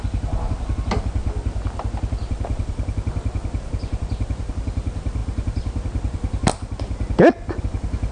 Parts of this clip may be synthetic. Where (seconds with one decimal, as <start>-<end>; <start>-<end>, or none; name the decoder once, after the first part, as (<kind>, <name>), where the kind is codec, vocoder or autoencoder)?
none